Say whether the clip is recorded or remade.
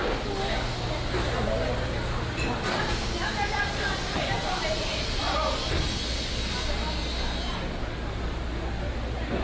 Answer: recorded